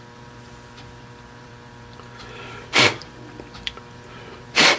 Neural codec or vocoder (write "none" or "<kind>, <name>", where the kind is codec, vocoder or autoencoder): vocoder, BigVGAN v2